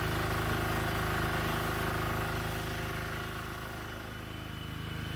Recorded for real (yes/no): yes